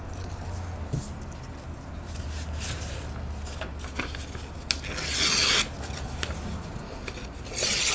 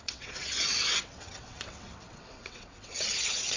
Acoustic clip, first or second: first